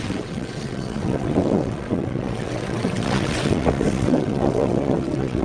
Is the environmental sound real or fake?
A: fake